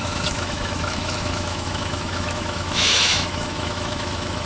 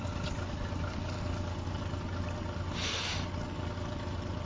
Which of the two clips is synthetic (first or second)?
first